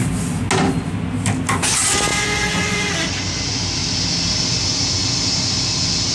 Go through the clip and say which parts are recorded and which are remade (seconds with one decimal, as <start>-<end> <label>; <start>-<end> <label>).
0.0-2.1 recorded; 2.1-2.9 remade; 2.9-6.1 recorded